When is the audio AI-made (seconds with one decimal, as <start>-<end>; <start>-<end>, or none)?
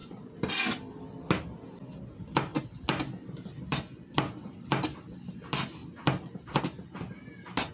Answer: none